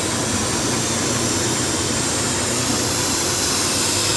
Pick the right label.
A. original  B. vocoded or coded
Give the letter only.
A